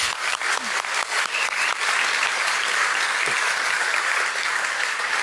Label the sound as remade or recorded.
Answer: remade